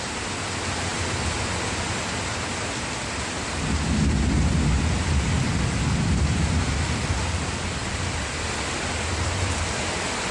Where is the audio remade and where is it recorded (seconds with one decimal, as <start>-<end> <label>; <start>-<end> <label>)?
0.0-10.3 recorded

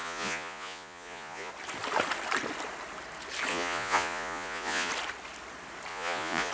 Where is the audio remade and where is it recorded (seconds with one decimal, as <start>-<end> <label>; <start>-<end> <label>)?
0.0-1.5 remade; 1.5-3.5 recorded; 3.5-4.9 remade; 4.9-5.9 recorded; 5.9-6.5 remade

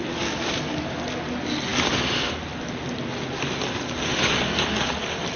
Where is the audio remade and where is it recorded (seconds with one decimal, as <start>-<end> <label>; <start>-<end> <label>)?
0.0-5.4 recorded

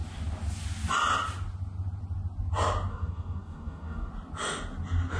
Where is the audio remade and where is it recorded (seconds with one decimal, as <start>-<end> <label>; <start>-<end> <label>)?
0.0-2.9 recorded; 2.9-4.1 remade; 4.1-5.2 recorded

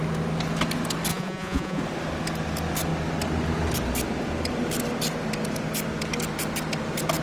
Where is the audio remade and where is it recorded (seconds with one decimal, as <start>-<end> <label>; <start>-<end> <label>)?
0.0-1.1 recorded; 1.1-1.8 remade; 1.8-7.2 recorded